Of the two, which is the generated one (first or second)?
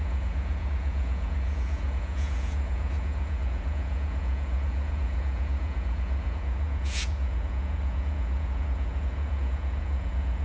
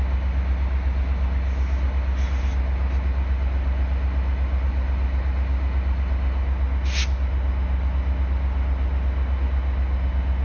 first